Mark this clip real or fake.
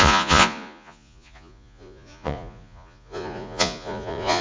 fake